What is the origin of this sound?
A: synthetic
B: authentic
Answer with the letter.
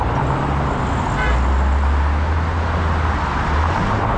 B